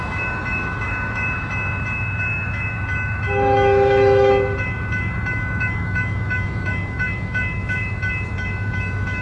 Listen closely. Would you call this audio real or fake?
fake